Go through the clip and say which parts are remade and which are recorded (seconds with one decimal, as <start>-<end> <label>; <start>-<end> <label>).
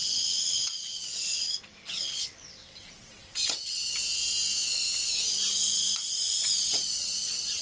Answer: 0.0-3.9 remade; 3.9-6.1 recorded; 6.1-7.6 remade